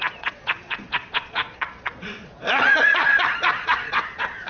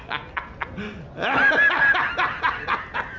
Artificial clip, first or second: first